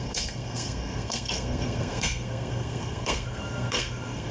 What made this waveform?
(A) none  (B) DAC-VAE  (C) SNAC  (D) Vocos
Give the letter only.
C